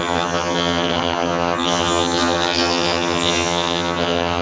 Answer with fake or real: fake